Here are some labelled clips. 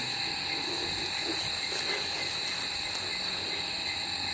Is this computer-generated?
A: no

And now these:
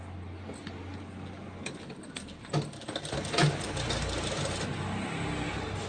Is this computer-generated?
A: no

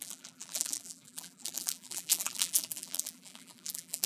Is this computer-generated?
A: yes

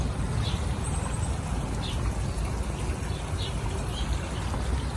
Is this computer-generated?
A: no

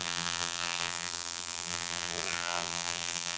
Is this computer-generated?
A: yes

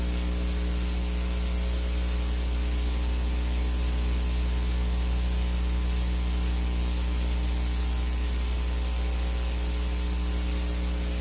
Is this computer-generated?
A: no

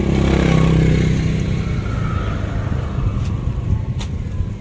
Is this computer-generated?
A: no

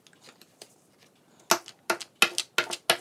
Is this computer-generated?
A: no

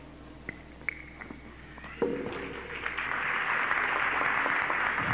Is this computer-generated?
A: no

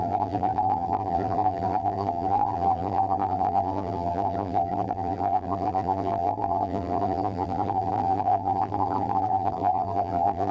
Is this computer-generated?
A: yes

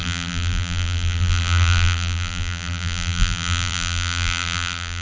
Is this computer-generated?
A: yes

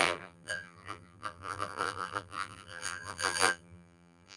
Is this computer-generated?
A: yes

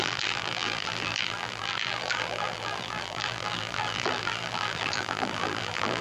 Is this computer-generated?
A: yes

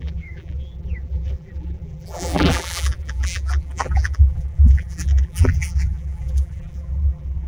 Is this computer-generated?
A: yes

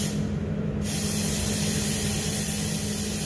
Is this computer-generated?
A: no